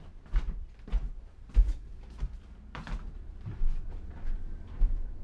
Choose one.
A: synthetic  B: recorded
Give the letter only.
A